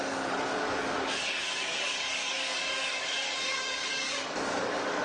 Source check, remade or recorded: remade